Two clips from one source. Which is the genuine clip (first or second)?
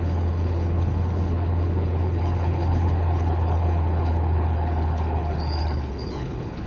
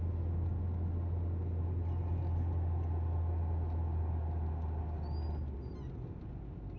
second